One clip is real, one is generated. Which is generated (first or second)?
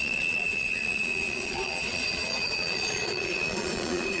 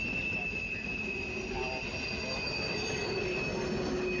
first